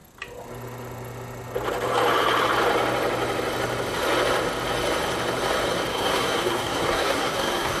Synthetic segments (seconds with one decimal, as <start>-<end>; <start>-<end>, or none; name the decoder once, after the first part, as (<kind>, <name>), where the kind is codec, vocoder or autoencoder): 5.9-7.8 (codec, SNAC)